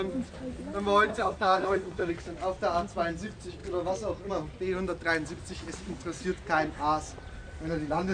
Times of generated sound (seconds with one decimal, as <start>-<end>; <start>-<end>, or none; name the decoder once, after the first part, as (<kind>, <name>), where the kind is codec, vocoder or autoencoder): 1.1-2.1 (codec, SNAC)